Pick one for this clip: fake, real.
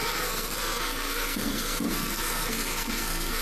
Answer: fake